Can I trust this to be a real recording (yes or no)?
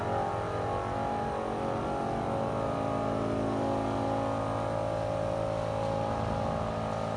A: yes